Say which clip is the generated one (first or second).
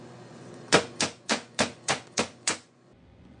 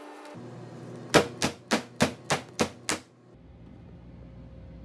first